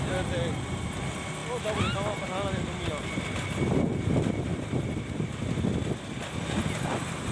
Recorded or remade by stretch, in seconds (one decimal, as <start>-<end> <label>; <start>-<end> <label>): 0.0-4.5 recorded; 4.5-5.5 remade; 5.5-7.3 recorded